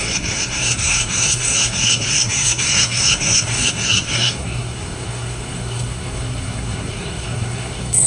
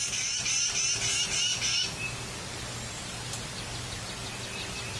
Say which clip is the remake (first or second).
first